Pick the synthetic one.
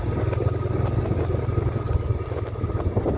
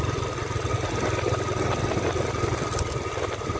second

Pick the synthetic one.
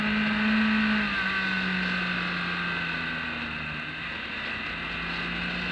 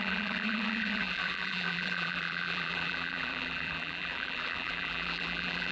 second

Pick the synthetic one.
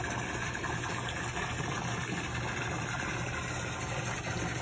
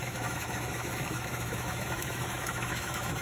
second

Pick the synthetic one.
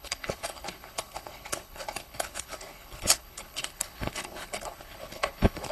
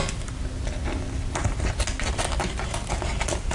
first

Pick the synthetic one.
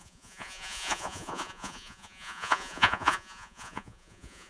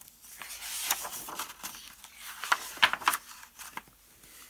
first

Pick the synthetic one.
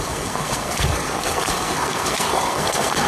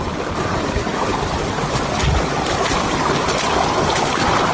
first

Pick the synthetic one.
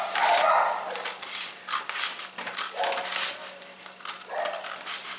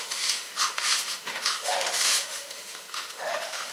second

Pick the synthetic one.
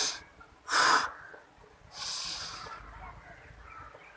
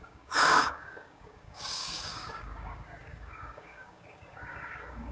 second